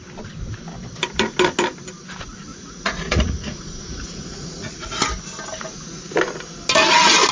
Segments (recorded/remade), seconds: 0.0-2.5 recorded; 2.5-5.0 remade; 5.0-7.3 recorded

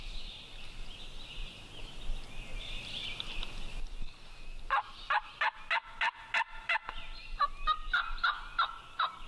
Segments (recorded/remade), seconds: 0.0-9.3 recorded